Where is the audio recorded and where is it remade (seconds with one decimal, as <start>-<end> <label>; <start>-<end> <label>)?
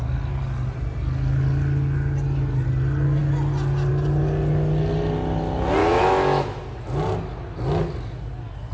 0.0-5.8 recorded; 5.8-6.6 remade; 6.6-8.7 recorded